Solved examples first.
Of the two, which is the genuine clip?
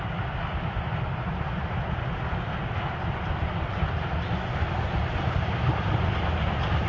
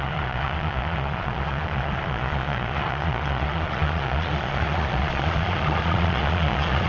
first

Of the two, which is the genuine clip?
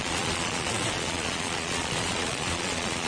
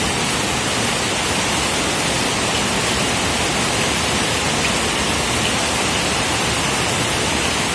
second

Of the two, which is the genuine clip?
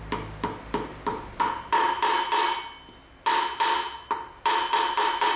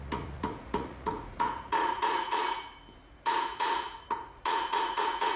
first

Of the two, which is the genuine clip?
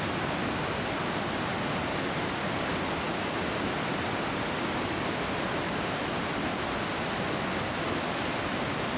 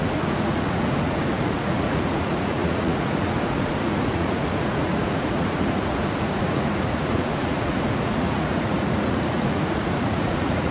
first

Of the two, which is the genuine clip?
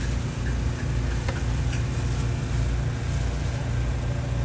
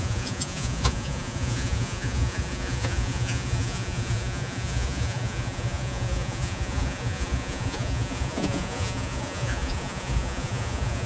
first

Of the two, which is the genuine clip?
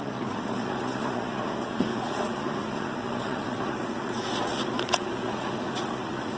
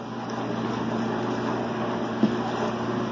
second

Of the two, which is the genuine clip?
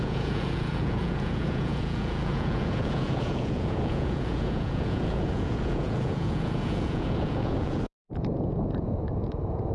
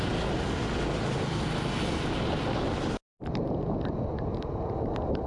second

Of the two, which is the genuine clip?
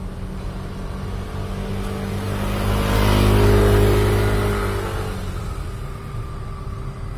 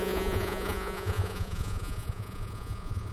first